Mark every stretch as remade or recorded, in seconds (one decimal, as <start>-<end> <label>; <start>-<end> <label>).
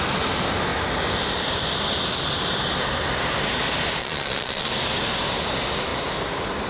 0.0-4.0 recorded; 4.0-4.7 remade; 4.7-6.7 recorded